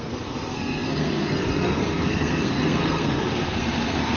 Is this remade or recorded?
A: remade